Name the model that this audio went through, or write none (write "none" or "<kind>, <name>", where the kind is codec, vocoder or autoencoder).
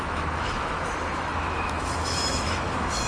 autoencoder, DAC-VAE